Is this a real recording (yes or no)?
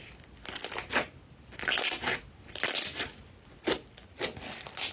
yes